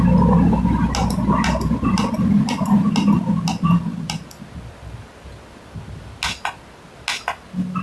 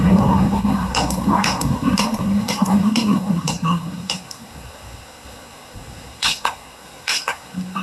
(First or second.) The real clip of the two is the first